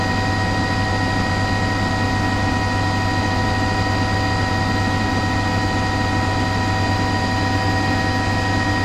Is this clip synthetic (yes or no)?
no